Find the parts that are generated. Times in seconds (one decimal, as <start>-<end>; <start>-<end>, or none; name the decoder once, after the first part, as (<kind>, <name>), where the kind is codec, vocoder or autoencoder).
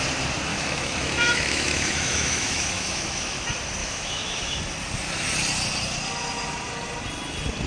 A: 0.5-3.4 (autoencoder, DAC-VAE); 3.8-4.6